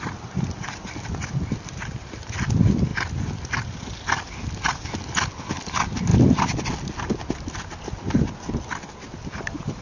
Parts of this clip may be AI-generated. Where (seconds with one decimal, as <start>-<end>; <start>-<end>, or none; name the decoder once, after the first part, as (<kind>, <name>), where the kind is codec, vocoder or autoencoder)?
none